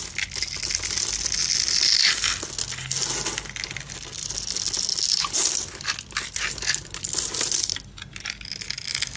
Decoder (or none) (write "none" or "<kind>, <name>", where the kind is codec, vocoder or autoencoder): none